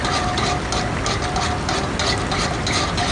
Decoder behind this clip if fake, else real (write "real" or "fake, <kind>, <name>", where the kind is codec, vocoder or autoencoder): real